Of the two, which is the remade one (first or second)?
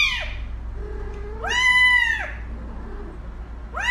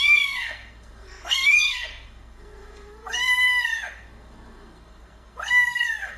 second